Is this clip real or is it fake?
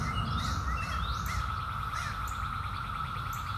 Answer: real